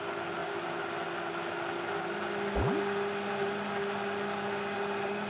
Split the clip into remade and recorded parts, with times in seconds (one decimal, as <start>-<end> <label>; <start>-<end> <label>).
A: 0.0-5.3 recorded